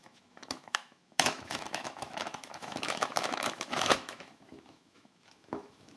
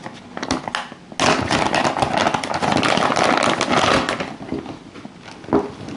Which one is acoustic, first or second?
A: second